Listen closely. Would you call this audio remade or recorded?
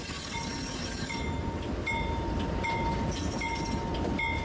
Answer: recorded